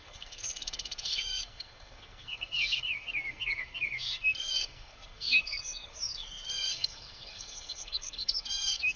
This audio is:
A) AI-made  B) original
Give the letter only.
A